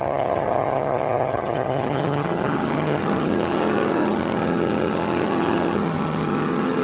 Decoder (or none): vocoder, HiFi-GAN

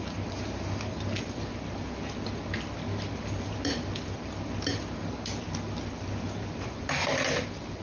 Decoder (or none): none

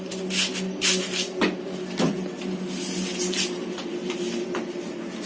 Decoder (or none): none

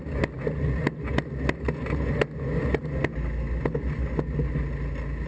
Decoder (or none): none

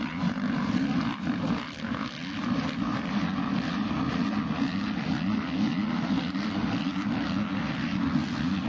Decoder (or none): none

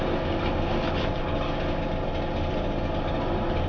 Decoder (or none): none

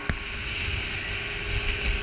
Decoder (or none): none